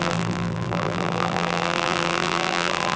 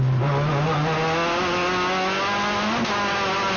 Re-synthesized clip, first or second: first